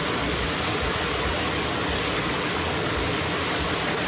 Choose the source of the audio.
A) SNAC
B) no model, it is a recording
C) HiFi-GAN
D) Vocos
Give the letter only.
B